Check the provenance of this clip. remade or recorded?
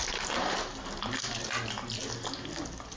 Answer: recorded